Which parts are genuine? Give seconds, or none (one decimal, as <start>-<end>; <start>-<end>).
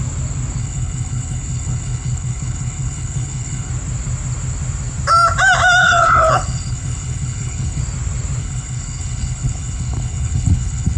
0.0-0.6; 3.7-5.8; 7.8-8.4